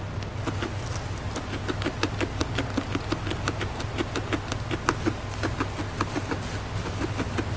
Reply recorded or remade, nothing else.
recorded